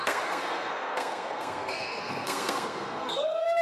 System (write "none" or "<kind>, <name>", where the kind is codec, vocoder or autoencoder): codec, SNAC